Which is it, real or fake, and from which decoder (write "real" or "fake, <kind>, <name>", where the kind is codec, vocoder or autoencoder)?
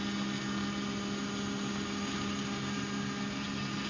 real